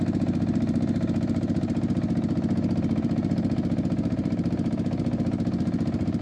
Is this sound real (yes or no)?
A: no